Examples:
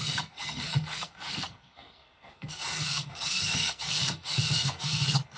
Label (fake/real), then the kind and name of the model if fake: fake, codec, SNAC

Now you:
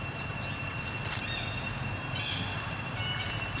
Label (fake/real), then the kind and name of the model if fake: real